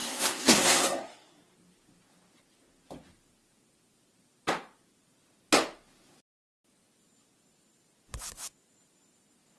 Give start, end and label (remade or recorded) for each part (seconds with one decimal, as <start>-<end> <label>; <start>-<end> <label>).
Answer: 0.0-1.4 remade; 1.4-9.6 recorded